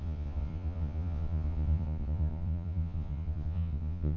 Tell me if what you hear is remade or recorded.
remade